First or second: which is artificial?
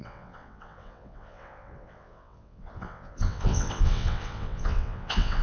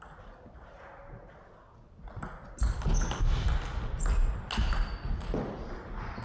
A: first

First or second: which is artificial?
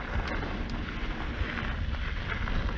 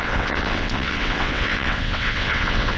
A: second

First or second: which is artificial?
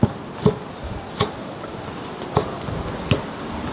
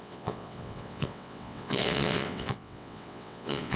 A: second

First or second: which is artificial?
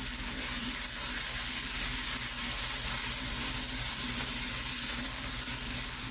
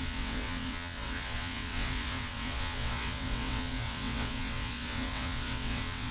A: second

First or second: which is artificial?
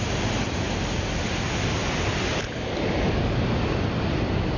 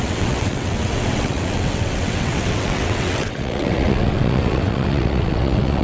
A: second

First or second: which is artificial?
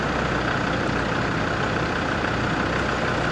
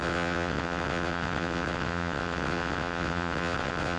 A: second